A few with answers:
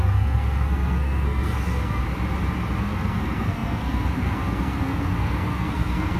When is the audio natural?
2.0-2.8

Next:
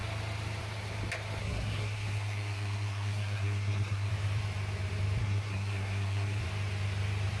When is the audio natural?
0.0-1.4; 4.1-5.2; 6.4-7.4

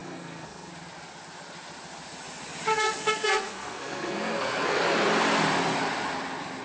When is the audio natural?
0.7-2.7; 4.8-6.6

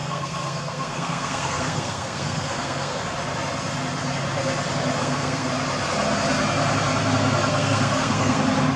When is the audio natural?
3.0-5.0; 5.5-7.5; 8.4-8.8

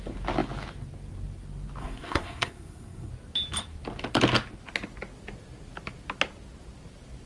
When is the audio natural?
0.0-1.8; 3.1-7.3